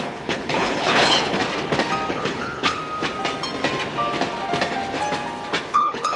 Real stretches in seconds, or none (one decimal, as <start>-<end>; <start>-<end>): 1.4-2.1; 2.8-5.7

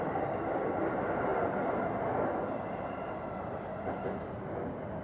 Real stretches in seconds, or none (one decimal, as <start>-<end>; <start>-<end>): 0.0-5.0

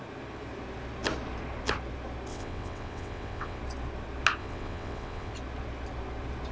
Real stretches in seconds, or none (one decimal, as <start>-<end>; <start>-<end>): 0.0-2.3; 3.6-4.4; 5.3-6.5

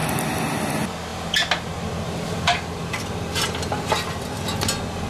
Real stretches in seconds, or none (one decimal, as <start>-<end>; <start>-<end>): 0.0-5.1

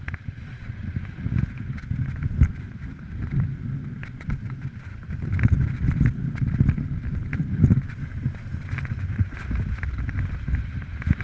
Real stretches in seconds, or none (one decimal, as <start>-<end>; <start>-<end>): 0.0-11.2

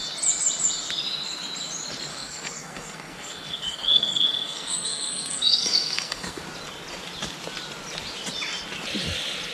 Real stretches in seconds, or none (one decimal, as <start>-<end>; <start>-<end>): 0.0-2.1; 6.4-9.5

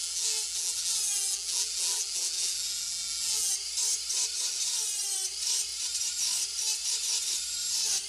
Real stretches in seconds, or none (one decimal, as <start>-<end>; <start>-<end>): 3.5-8.1

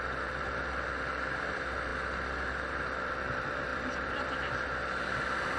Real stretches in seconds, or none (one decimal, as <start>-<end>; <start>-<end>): 0.0-3.7; 4.5-5.6